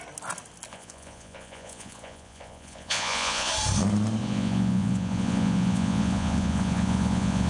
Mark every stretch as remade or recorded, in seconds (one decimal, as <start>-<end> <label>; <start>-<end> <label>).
0.0-0.7 recorded; 0.7-3.5 remade; 3.5-4.2 recorded; 4.2-7.5 remade